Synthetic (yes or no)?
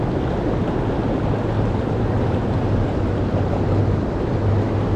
no